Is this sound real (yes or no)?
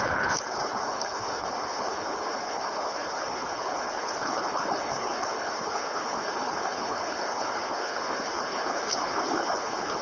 no